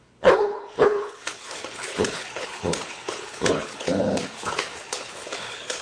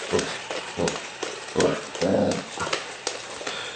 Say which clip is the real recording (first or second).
second